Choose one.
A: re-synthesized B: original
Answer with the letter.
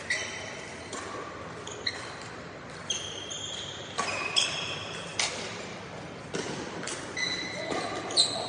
B